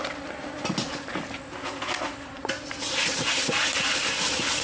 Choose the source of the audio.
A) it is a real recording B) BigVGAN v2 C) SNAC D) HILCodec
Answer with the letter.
A